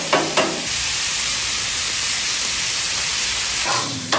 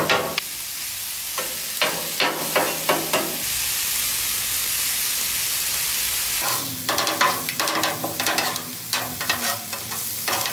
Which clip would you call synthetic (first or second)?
first